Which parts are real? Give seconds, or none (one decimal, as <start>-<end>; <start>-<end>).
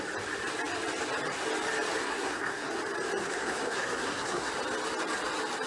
0.0-2.0; 2.7-3.2; 4.5-5.7